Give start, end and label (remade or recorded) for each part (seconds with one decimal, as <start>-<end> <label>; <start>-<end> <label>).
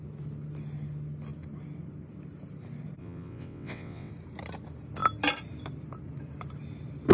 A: 0.0-3.0 recorded; 3.0-4.1 remade; 4.1-7.1 recorded